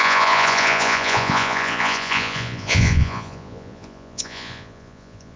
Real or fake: fake